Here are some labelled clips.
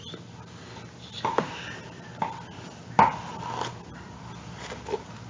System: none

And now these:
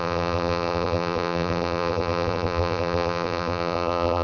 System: vocoder, BigVGAN v2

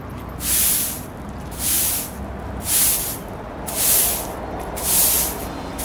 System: none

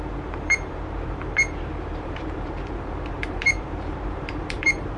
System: vocoder, BigVGAN v2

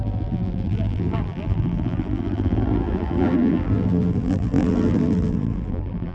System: vocoder, BigVGAN v2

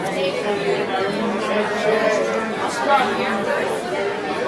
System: none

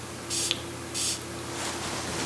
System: none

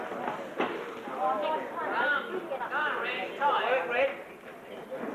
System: none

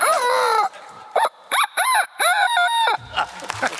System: vocoder, BigVGAN v2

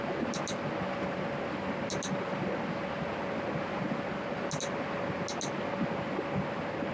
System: none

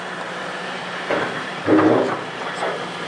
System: vocoder, BigVGAN v2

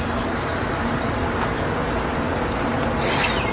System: none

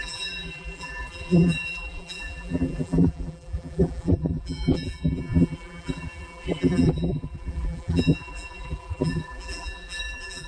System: vocoder, BigVGAN v2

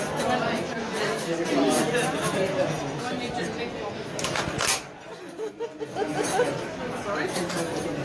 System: none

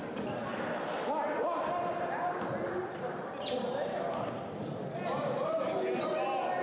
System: none